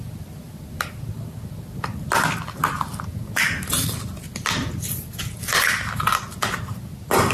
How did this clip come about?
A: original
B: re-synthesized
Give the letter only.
A